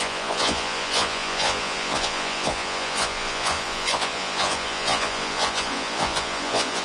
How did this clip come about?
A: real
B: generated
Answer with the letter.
B